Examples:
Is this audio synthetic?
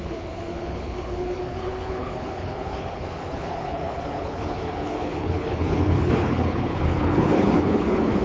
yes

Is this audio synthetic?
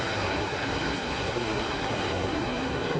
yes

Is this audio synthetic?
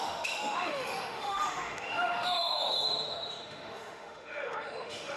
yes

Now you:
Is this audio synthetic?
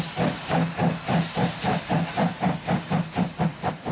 no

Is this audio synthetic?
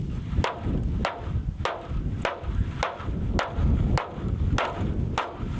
no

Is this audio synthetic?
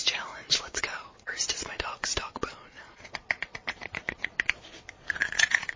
yes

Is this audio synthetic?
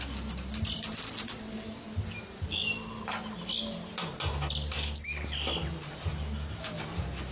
no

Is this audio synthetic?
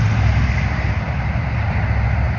no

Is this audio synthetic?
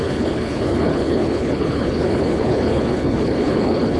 yes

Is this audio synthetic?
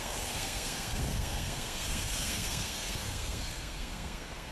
yes